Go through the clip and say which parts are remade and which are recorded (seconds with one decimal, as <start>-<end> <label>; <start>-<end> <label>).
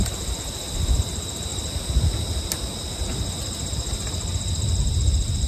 0.0-1.5 remade; 1.5-4.8 recorded; 4.8-5.5 remade